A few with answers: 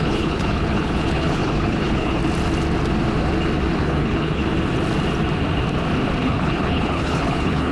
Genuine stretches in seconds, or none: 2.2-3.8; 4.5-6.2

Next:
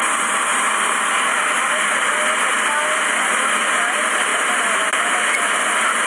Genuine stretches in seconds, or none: 0.0-0.5; 1.1-4.3; 4.9-6.1

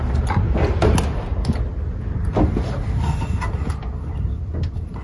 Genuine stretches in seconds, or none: 0.0-5.0

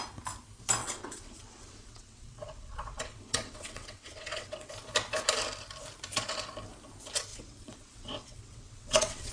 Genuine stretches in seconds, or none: 0.0-0.8; 4.7-7.3

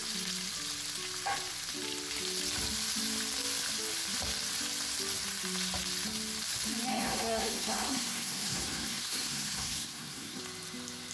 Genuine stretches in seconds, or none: 0.0-6.9; 10.4-11.1